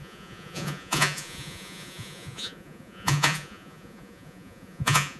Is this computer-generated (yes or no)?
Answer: yes